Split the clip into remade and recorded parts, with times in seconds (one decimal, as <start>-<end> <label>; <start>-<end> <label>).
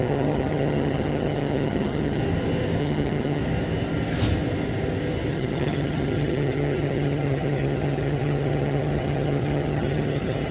0.0-2.2 remade; 2.2-2.8 recorded; 2.8-3.4 remade; 3.4-5.3 recorded; 5.3-10.5 remade